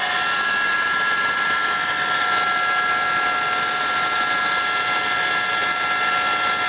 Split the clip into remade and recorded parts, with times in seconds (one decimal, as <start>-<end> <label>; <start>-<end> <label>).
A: 0.0-6.7 recorded